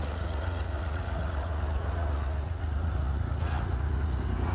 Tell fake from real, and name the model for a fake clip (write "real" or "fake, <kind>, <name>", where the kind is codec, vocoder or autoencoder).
fake, vocoder, Vocos